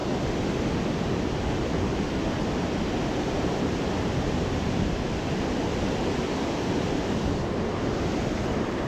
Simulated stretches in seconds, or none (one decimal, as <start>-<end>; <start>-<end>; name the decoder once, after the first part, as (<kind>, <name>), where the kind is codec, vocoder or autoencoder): none